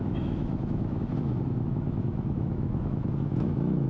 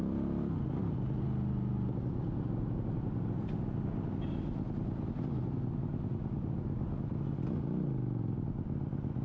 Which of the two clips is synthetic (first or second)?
first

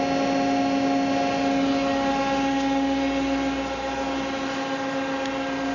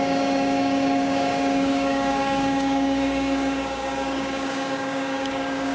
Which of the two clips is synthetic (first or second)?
second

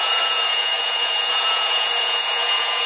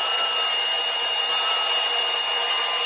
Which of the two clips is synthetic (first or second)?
first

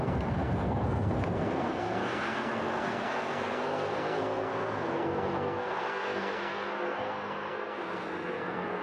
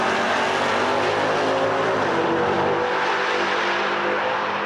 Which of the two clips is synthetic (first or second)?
first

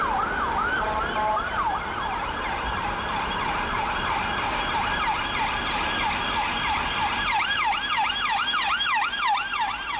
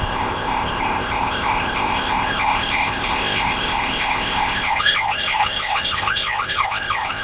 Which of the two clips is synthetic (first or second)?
second